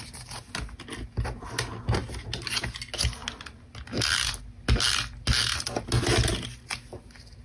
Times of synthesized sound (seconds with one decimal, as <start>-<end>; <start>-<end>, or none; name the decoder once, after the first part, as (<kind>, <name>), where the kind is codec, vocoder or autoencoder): none